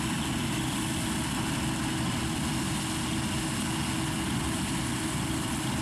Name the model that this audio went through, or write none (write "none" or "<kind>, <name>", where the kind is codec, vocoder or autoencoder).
none